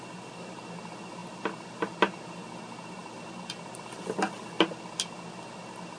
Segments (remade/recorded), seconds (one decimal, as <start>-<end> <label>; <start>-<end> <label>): 0.0-6.0 recorded